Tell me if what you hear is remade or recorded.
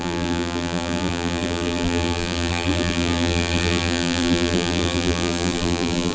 remade